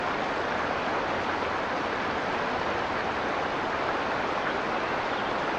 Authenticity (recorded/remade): recorded